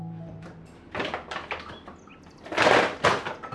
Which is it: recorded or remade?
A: remade